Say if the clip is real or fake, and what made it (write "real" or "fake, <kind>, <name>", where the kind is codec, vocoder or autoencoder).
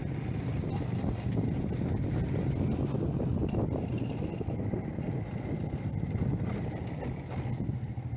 real